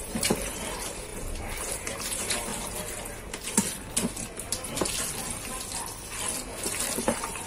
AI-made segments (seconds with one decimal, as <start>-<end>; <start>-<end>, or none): 0.0-1.1; 1.7-2.5; 7.0-7.5